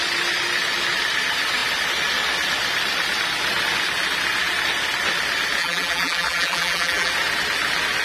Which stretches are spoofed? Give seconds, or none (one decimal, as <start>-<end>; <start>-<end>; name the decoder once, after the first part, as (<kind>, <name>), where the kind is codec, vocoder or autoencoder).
5.6-7.1 (vocoder, BigVGAN v2)